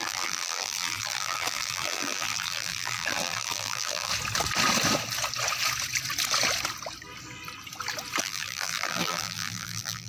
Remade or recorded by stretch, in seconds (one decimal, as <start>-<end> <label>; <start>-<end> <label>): 0.0-4.1 remade; 4.1-8.2 recorded; 8.2-10.1 remade